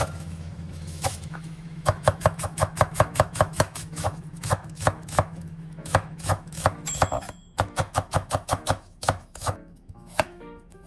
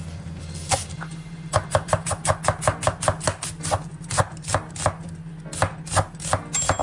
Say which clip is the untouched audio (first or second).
second